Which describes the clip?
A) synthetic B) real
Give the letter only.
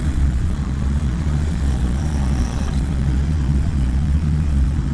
A